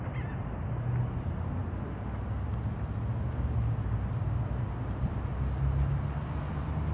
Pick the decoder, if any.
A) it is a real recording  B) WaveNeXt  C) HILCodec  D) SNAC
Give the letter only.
A